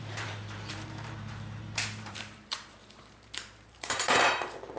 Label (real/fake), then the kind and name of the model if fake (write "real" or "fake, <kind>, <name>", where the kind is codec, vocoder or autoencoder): fake, vocoder, BigVGAN v2